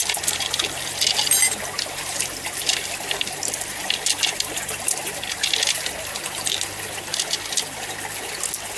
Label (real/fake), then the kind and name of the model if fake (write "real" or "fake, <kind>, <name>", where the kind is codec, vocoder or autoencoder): real